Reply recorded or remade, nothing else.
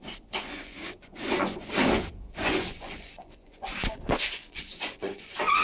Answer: remade